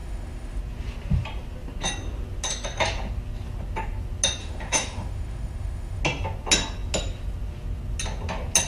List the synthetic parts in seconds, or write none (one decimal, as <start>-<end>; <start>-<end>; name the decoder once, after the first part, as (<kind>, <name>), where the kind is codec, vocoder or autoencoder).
0.0-0.6 (autoencoder, DAC-VAE); 4.4-6.0